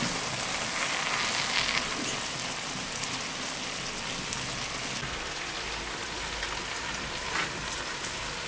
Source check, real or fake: real